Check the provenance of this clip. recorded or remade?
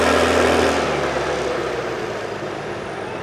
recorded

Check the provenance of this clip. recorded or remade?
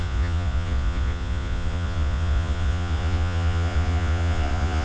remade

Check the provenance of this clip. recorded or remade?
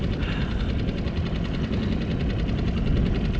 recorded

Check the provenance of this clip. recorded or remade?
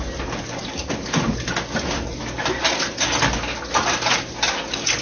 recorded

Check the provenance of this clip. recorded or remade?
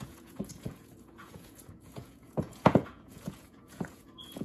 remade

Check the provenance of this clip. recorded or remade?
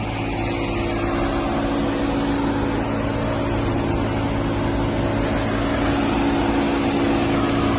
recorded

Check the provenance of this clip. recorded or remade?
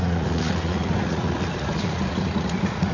remade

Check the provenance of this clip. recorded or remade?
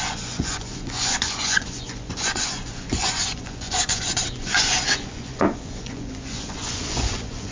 remade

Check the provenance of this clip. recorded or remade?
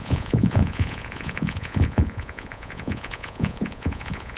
remade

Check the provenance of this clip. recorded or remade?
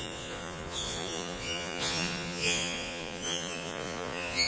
remade